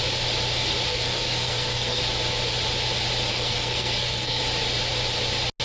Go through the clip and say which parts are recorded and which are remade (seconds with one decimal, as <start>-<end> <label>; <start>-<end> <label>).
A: 0.0-0.9 recorded; 0.9-2.0 remade; 2.0-3.3 recorded; 3.3-4.4 remade; 4.4-5.6 recorded

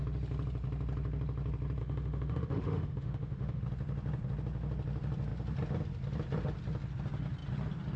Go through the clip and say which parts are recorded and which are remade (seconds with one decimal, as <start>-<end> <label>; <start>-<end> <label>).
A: 0.0-1.8 recorded; 1.8-3.6 remade; 3.6-8.0 recorded

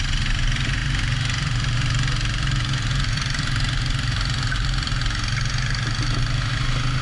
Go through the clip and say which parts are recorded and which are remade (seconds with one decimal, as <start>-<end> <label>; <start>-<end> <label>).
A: 0.0-0.8 recorded; 0.8-5.0 remade; 5.0-7.0 recorded

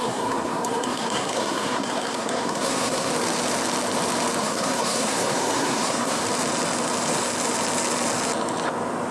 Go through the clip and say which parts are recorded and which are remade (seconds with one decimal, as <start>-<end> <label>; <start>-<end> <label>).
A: 0.0-3.1 remade; 3.1-4.4 recorded; 4.4-6.2 remade; 6.2-9.1 recorded

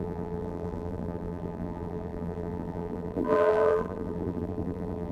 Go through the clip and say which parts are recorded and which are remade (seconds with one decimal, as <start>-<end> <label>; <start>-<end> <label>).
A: 0.0-5.1 remade

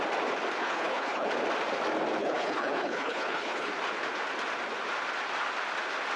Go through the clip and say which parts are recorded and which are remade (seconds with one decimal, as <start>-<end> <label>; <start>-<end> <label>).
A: 0.0-0.6 recorded; 0.6-1.3 remade; 1.3-2.2 recorded; 2.2-3.7 remade; 3.7-6.2 recorded

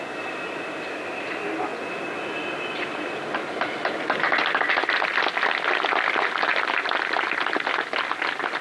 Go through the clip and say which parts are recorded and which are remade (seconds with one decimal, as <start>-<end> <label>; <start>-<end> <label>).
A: 0.0-8.6 recorded